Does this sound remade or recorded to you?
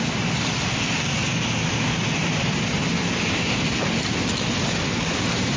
recorded